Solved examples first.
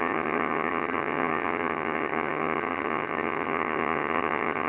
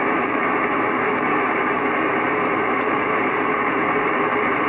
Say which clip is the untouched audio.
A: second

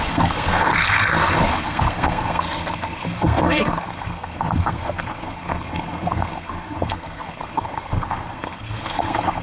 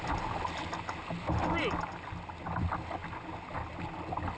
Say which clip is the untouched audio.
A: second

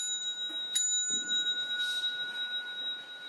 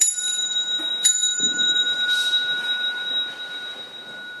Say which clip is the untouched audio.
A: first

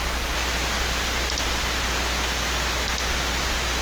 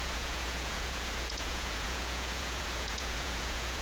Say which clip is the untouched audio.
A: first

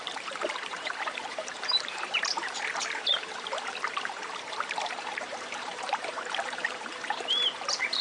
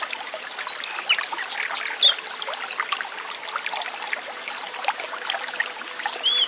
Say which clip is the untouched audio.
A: second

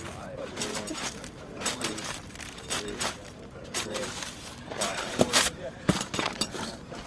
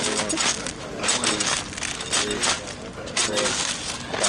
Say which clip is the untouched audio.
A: second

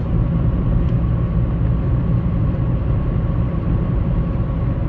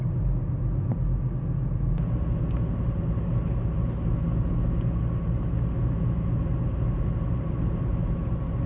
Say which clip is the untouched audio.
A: second